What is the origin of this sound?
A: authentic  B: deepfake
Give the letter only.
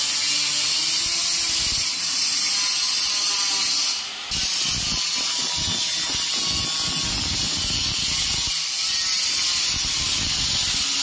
A